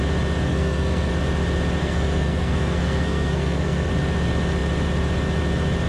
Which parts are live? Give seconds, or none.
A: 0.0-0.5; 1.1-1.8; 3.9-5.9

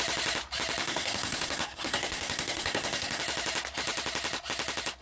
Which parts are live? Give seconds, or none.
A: 0.0-0.8; 3.2-5.0